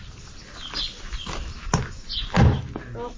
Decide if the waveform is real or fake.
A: real